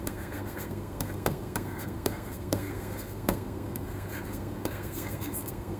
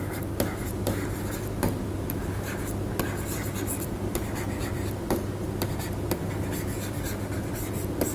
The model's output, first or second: first